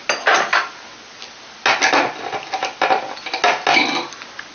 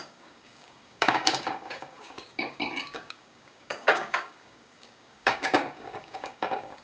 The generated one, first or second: second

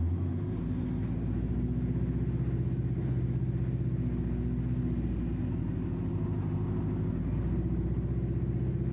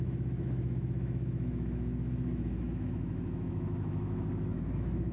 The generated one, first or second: second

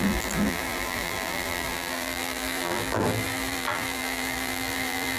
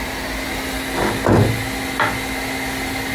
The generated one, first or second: first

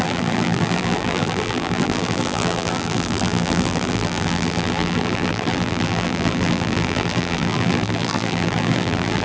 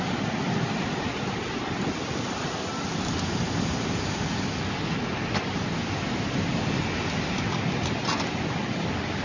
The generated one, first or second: first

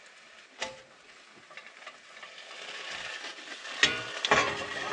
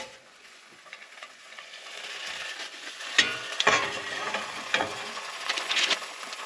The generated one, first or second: second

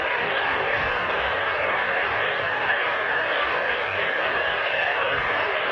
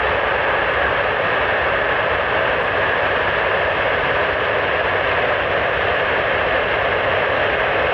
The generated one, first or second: first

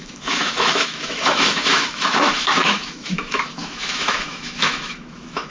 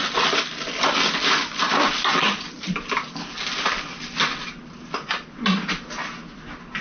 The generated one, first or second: first